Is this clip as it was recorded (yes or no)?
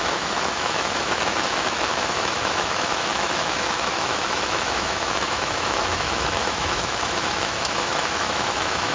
no